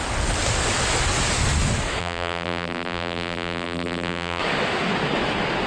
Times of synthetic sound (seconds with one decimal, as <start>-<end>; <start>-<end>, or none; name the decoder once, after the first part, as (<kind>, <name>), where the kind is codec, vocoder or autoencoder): 2.0-4.4 (vocoder, BigVGAN v2)